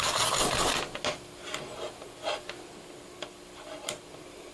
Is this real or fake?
real